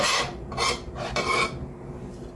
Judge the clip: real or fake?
fake